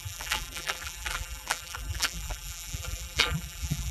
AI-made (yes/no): yes